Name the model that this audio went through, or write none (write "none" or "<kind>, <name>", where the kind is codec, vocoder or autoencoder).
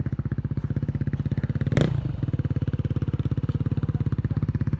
none